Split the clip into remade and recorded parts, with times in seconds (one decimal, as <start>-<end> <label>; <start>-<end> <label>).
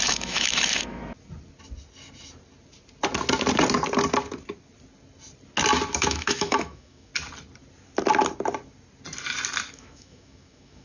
0.0-1.0 remade; 1.0-5.9 recorded; 5.9-7.1 remade; 7.1-9.7 recorded; 9.7-10.8 remade